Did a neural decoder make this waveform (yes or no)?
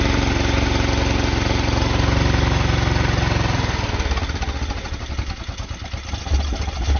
no